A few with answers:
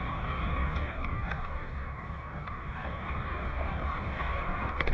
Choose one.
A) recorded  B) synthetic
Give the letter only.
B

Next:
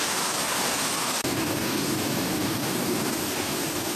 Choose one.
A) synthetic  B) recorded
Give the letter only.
A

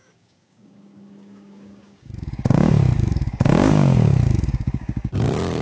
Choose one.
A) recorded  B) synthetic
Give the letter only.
B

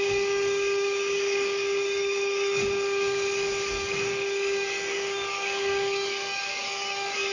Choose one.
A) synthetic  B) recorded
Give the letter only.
A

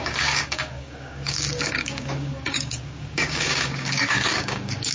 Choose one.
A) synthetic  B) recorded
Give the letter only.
A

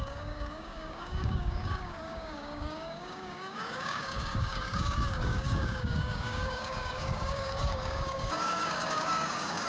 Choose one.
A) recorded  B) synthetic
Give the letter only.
B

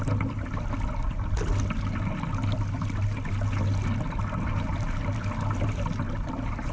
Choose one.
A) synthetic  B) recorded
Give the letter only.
B